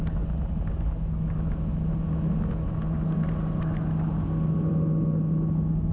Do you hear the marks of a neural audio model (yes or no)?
no